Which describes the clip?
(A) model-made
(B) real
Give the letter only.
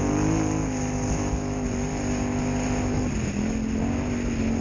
B